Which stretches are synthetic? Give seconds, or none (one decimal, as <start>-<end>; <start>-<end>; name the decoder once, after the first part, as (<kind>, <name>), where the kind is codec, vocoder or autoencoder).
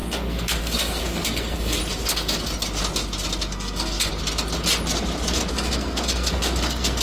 0.0-1.8 (codec, SNAC); 3.5-4.1; 5.5-7.0